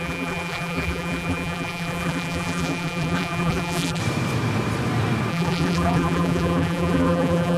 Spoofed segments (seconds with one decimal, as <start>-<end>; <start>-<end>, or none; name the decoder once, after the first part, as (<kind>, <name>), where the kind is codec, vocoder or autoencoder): 0.0-4.0 (vocoder, BigVGAN v2); 5.3-7.6

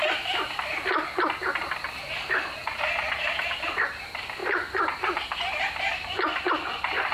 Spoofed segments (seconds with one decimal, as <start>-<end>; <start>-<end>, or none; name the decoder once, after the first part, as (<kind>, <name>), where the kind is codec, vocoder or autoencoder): none

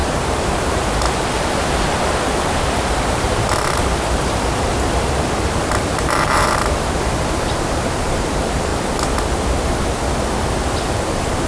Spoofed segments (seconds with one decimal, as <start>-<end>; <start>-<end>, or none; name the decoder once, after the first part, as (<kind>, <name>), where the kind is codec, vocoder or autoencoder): 0.0-8.7 (vocoder, BigVGAN v2); 11.1-11.5

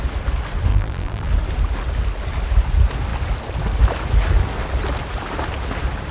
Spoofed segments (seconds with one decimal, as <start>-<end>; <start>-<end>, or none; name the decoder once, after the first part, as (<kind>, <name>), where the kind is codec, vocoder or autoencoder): 0.7-1.3 (vocoder, BigVGAN v2)

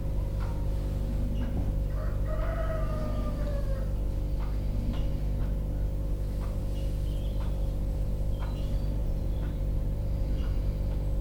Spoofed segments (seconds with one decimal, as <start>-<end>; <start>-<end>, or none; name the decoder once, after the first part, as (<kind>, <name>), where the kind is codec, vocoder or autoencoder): 9.0-10.6 (vocoder, BigVGAN v2)